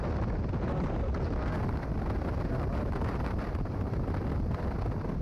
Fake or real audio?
real